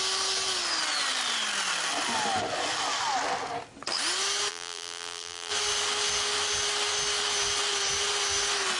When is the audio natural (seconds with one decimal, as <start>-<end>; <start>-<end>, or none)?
0.0-4.5; 5.5-8.8